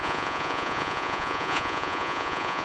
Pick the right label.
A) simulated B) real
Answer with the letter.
A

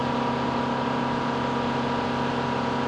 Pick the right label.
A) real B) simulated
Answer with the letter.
A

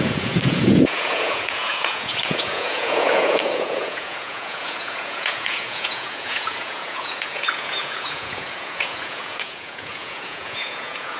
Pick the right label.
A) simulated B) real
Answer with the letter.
A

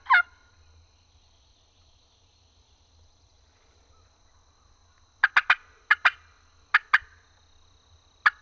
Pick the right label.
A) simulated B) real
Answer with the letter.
B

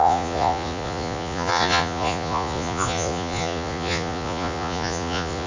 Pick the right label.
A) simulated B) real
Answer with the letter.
A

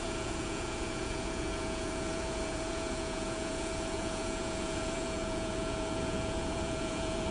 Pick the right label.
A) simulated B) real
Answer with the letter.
A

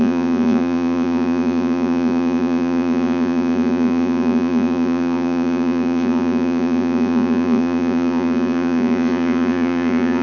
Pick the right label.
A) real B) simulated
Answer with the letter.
B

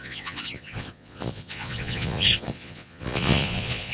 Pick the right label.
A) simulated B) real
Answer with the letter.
A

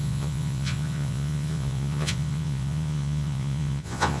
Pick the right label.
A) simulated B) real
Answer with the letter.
A